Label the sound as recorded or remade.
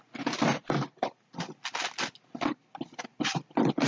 recorded